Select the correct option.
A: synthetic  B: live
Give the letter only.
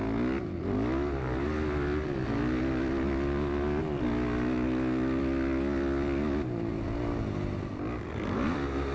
B